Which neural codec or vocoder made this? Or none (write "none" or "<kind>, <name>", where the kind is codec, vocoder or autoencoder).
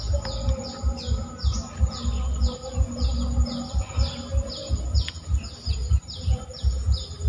none